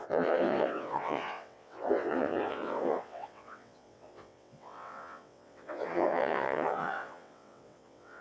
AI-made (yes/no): yes